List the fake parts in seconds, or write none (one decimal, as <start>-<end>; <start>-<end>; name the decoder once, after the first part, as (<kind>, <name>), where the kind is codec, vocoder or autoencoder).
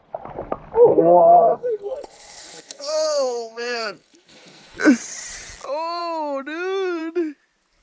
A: 0.9-4.8 (codec, SNAC)